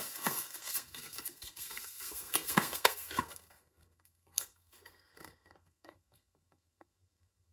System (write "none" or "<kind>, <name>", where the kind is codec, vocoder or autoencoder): codec, SNAC